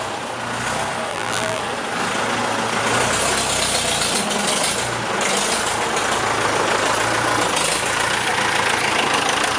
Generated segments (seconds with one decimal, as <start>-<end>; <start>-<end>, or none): 1.1-1.6